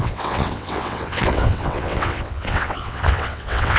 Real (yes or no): no